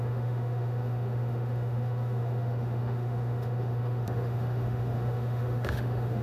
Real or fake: fake